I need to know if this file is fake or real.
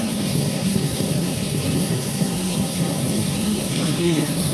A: fake